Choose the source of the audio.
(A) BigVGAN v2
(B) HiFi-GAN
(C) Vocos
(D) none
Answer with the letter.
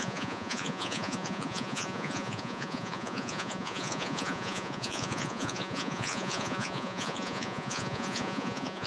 C